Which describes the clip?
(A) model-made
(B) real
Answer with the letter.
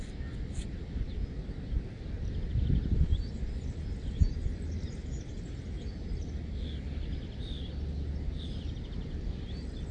B